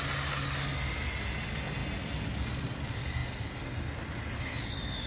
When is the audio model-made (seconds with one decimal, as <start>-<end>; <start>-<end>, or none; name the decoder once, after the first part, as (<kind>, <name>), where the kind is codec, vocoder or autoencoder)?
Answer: none